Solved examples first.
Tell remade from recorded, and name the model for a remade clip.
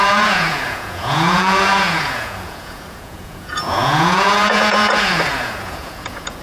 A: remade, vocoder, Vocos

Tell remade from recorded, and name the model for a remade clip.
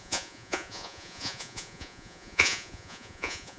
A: remade, vocoder, Vocos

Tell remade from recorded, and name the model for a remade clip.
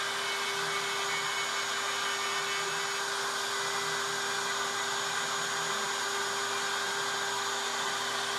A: recorded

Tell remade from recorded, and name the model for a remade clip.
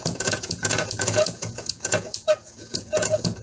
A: remade, vocoder, Vocos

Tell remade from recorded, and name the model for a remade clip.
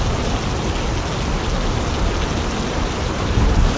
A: recorded